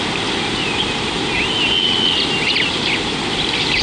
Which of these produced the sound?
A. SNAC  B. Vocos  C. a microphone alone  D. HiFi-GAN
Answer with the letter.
C